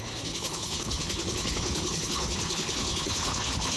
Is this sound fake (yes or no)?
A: yes